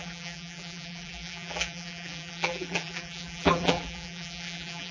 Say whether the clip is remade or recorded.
remade